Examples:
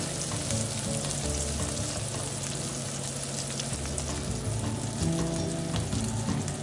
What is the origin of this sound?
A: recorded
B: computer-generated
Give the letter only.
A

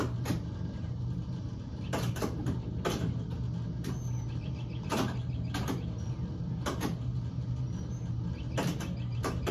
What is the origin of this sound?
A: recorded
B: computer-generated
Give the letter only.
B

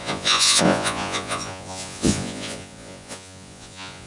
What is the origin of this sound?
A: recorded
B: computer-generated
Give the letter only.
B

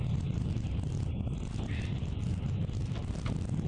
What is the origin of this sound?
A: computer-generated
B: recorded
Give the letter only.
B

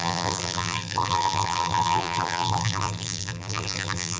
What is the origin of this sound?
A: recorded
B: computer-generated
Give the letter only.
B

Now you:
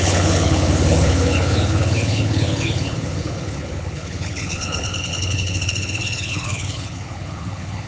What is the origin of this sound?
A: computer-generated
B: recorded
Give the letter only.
A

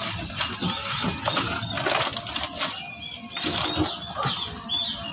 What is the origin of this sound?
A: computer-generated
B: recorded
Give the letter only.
B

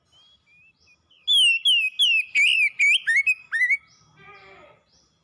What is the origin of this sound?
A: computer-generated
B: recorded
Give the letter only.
B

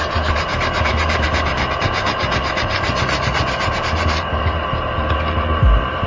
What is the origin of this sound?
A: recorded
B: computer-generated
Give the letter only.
B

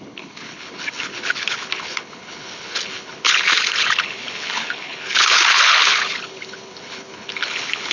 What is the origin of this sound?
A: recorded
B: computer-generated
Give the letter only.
B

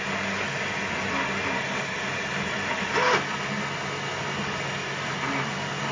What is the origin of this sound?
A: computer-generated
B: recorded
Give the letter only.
B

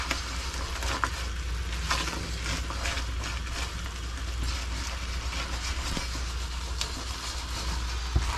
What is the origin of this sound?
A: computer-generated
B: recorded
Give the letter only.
B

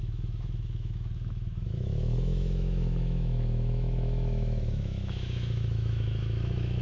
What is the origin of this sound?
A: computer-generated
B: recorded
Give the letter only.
A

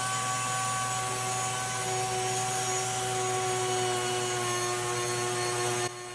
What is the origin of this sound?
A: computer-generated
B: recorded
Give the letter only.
B